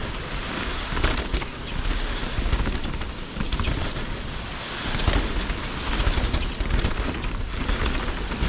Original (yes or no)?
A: yes